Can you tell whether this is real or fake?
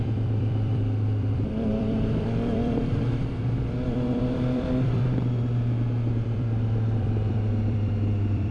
fake